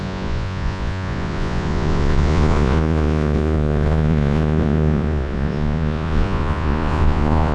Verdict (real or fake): fake